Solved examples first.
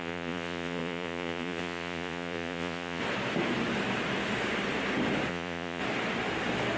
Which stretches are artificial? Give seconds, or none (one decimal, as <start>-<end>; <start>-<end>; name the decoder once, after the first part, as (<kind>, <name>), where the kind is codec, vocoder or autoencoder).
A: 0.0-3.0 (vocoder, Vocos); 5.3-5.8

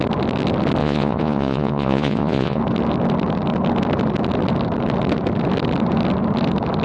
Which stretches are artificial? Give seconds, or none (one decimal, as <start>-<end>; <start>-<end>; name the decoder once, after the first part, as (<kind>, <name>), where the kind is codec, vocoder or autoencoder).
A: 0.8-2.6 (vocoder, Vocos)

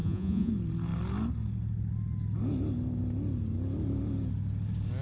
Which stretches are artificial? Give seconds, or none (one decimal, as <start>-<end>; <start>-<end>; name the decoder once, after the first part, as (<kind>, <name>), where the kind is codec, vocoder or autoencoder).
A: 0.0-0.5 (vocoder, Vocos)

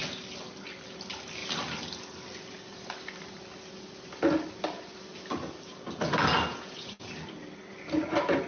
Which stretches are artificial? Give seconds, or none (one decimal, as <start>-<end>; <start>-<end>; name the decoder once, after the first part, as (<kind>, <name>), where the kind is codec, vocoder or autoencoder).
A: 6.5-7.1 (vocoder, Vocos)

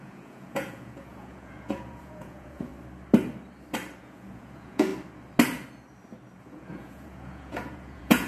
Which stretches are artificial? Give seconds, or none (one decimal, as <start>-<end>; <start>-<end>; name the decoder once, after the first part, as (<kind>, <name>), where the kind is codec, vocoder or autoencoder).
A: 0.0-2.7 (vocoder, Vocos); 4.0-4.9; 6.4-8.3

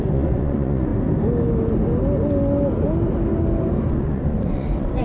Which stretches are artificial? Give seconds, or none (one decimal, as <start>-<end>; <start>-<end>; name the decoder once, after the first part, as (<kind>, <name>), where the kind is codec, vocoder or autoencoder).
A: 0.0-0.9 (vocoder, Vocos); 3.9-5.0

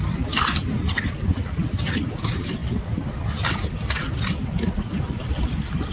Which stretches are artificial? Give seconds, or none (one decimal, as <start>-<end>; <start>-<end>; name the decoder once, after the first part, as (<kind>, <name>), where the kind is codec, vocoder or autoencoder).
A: none

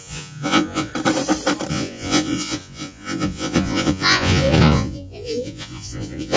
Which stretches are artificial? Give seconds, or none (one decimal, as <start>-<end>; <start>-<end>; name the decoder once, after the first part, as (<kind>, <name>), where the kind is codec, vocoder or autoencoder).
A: 0.0-0.9 (vocoder, Vocos); 1.7-6.4